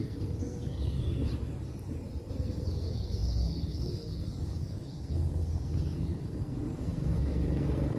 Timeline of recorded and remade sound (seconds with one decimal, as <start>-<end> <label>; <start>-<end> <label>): 0.0-1.3 remade; 1.3-2.3 recorded; 2.3-8.0 remade